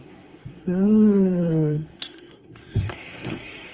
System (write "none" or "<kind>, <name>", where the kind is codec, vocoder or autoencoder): codec, SNAC